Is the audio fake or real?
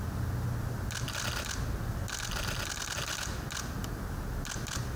real